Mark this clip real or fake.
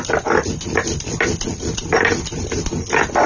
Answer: fake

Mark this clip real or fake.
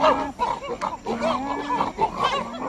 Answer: real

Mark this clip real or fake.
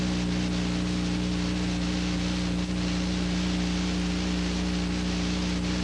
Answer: real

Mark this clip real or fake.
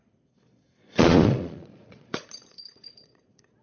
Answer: fake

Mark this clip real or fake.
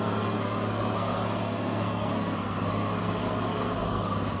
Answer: fake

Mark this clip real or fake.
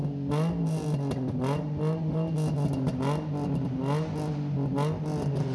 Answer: real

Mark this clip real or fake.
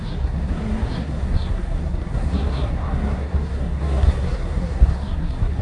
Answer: fake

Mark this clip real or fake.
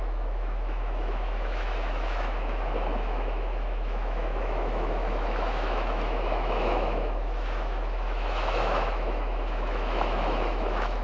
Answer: fake